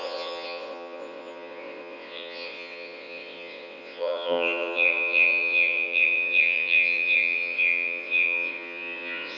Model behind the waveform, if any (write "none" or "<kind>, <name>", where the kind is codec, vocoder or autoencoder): vocoder, WaveNeXt